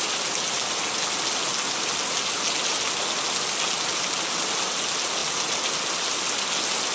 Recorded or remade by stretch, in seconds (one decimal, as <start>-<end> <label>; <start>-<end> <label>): 0.0-6.9 recorded